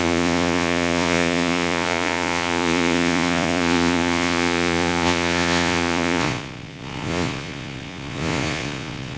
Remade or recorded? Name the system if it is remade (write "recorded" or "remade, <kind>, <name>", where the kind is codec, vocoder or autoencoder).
remade, vocoder, Vocos